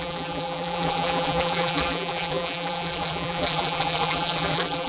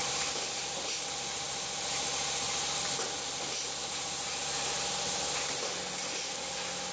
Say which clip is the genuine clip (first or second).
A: second